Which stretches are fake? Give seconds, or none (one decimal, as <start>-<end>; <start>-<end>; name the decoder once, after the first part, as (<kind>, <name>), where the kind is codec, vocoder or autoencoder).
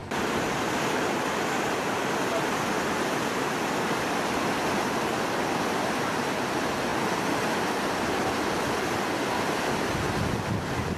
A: none